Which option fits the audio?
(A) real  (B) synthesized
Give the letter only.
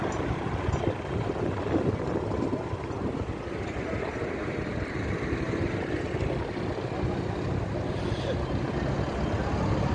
A